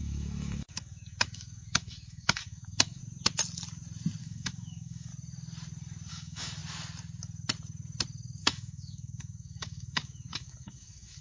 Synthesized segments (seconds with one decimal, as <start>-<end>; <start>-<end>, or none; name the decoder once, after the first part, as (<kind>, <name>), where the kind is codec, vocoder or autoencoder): 0.0-3.0 (autoencoder, DAC-VAE); 4.2-5.1; 6.1-6.6; 8.4-11.2